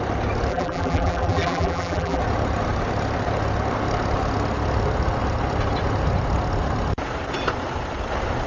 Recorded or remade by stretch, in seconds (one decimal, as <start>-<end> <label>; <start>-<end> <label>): 0.0-0.5 recorded; 0.5-2.2 remade; 2.2-8.5 recorded

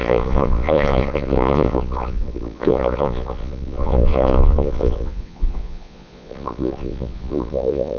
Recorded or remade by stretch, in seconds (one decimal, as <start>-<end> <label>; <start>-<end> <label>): 0.0-8.0 remade

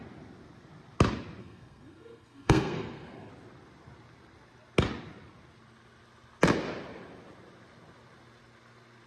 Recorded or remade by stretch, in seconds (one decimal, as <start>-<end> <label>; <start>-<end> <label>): 0.0-1.4 recorded; 1.4-3.3 remade; 3.3-9.1 recorded

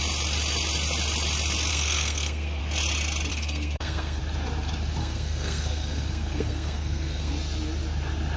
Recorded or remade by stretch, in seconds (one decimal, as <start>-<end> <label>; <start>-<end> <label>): 0.0-1.7 recorded; 1.7-2.6 remade; 2.6-3.3 recorded; 3.3-4.2 remade; 4.2-5.0 recorded; 5.0-7.3 remade; 7.3-8.4 recorded

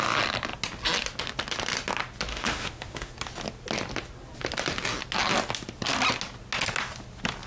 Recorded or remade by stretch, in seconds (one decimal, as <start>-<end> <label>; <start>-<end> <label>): 0.0-2.3 recorded; 2.3-3.1 remade; 3.1-7.5 recorded

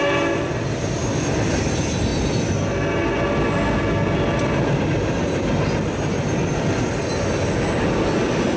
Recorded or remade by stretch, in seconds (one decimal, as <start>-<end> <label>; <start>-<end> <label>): 0.0-8.6 recorded